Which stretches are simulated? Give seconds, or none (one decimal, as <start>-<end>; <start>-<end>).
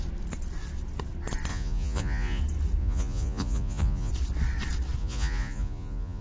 1.5-2.4; 2.8-4.1; 5.0-6.2